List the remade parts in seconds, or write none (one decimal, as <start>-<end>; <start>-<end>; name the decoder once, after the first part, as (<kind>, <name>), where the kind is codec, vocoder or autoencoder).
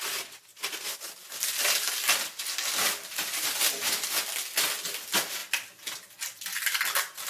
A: none